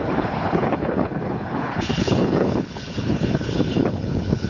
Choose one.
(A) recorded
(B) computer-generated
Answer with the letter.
B